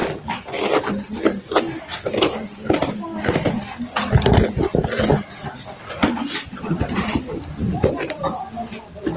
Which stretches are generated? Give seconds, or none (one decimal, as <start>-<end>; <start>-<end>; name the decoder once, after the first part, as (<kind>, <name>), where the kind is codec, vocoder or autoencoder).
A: none